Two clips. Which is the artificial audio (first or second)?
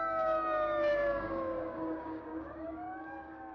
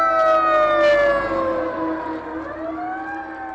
first